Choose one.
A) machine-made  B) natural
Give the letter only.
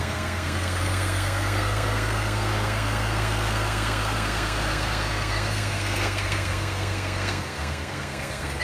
A